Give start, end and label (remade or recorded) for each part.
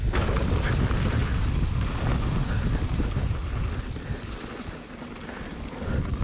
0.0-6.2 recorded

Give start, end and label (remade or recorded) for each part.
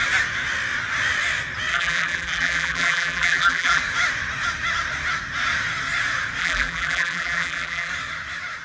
0.0-1.7 recorded; 1.7-3.8 remade; 3.8-6.4 recorded; 6.4-7.9 remade; 7.9-8.6 recorded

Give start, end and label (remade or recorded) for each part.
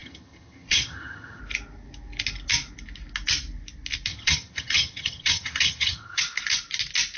0.0-1.4 remade; 1.4-4.1 recorded; 4.1-6.2 remade; 6.2-7.2 recorded